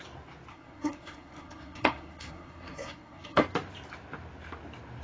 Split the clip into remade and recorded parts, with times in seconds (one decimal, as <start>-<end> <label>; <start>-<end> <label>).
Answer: 0.0-0.5 recorded; 0.5-3.4 remade; 3.4-5.0 recorded